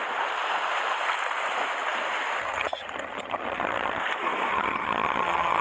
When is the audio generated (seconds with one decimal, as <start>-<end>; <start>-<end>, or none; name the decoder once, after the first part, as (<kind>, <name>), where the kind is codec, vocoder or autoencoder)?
2.4-4.0 (vocoder, HiFi-GAN); 4.5-5.6